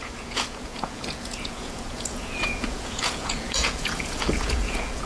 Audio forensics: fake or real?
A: fake